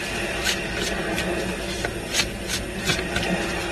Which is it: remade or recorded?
recorded